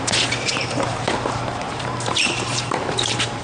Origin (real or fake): fake